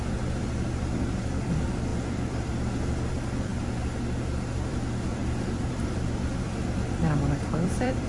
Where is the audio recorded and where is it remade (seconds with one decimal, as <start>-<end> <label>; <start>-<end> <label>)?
0.0-3.5 remade; 3.5-4.7 recorded; 4.7-8.1 remade